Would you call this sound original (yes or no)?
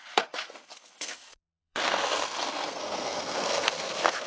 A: no